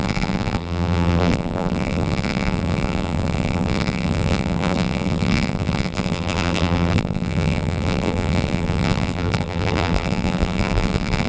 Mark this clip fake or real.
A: fake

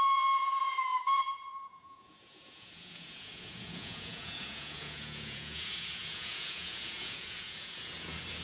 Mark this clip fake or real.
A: fake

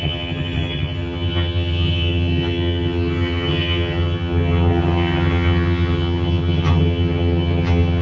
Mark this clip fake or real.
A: fake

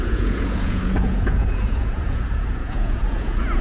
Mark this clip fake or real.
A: fake